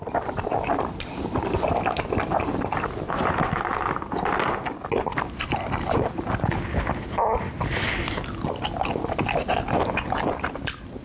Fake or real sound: real